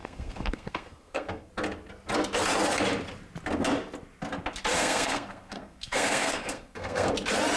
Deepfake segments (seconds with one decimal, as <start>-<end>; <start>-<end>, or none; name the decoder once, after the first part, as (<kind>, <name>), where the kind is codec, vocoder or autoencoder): 0.0-1.5 (codec, SNAC); 4.7-7.1